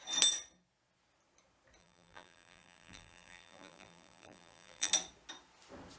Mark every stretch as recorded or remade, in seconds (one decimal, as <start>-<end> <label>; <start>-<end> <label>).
0.0-1.8 recorded; 1.8-4.9 remade; 4.9-6.0 recorded